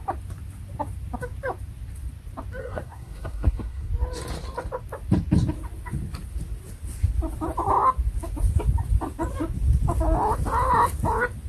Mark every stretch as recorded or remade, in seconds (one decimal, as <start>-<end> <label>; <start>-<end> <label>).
0.0-2.6 recorded; 2.6-3.9 remade; 3.9-11.5 recorded